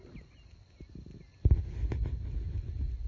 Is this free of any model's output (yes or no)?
yes